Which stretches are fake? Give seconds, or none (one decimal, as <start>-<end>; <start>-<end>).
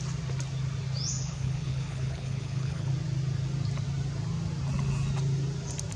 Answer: 1.2-2.9